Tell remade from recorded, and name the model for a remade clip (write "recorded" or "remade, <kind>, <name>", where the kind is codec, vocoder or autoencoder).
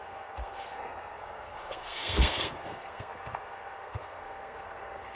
remade, codec, SNAC